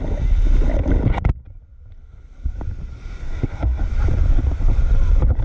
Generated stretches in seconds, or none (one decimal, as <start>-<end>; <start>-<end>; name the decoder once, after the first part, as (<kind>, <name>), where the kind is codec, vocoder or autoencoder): 3.2-3.8 (codec, SNAC)